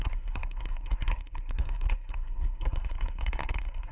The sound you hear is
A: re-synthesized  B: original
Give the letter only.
A